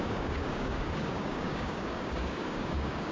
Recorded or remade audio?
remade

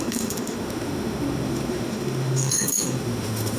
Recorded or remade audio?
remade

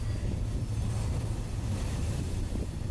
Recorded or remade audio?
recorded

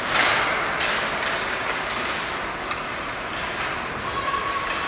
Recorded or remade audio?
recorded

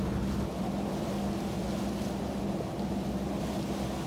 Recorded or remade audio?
recorded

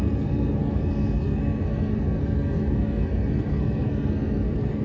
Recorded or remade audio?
remade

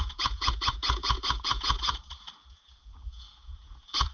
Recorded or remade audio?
remade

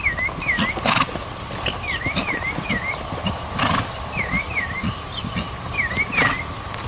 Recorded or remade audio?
recorded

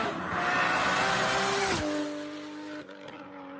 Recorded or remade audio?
recorded